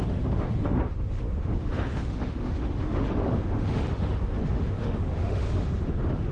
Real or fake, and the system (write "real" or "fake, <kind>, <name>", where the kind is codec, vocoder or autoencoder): fake, autoencoder, DAC-VAE